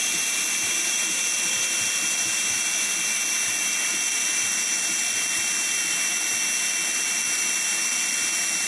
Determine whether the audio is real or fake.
real